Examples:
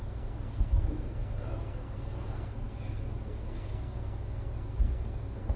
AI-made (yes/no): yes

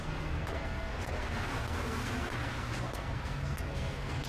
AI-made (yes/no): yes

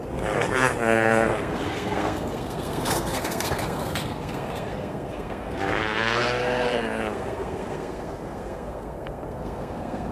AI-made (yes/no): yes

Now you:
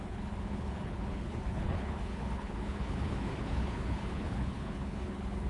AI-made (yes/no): yes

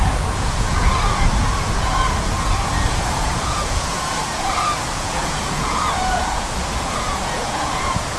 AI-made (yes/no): yes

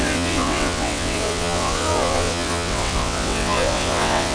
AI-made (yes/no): yes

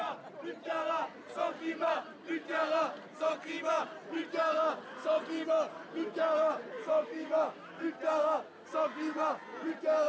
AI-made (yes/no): no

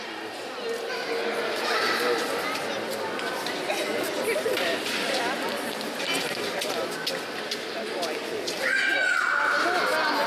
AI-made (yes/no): no